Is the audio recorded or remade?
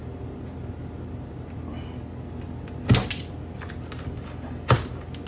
recorded